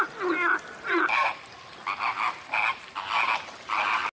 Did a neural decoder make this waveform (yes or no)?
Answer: no